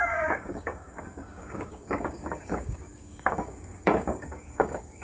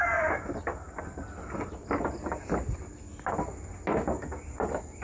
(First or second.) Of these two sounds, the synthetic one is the first